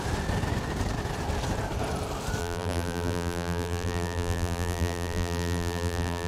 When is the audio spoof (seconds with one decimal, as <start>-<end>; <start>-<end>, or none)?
2.4-6.3